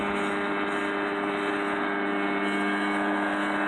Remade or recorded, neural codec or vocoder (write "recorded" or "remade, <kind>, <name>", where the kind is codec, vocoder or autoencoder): recorded